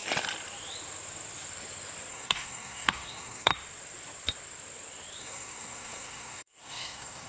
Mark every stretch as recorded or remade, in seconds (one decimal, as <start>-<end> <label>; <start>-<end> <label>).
0.0-2.1 recorded; 2.1-3.5 remade; 3.5-5.2 recorded; 5.2-7.3 remade